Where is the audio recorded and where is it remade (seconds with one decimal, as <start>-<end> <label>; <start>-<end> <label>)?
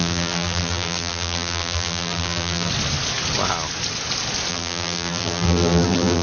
0.0-2.7 remade; 2.7-4.5 recorded; 4.5-6.2 remade